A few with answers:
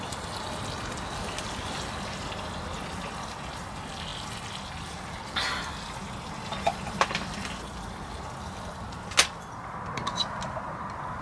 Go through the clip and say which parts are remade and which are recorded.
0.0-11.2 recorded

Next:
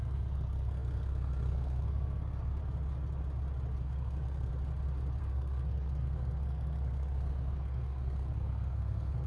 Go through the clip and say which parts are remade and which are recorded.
0.0-2.6 remade; 2.6-3.8 recorded; 3.8-4.5 remade; 4.5-5.2 recorded; 5.2-9.3 remade

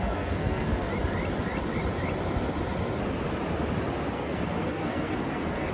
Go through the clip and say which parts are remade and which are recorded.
0.0-0.9 remade; 0.9-4.1 recorded; 4.1-5.7 remade